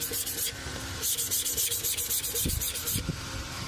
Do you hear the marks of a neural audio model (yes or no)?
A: yes